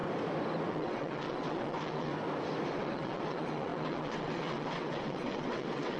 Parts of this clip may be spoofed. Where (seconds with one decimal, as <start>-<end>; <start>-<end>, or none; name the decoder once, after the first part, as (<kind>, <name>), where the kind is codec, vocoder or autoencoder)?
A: 0.7-2.1 (vocoder, WaveNeXt); 2.7-6.0